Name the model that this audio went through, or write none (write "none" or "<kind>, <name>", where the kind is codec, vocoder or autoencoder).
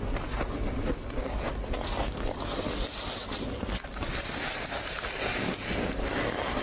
none